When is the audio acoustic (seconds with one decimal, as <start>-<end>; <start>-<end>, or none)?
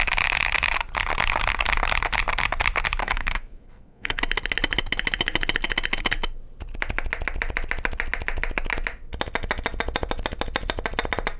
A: 0.0-3.0; 4.2-11.4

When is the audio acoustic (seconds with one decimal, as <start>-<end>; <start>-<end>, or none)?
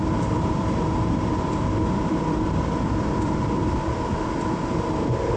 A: 3.6-4.3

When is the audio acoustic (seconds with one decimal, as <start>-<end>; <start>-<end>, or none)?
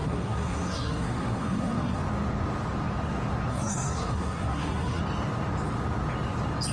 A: 2.0-3.5; 5.0-6.7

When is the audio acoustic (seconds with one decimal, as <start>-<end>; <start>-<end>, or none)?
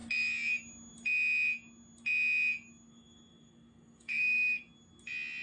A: 0.0-2.9; 4.6-5.4